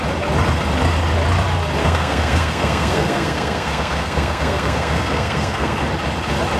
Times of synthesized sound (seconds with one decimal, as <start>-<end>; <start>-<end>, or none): 1.8-5.8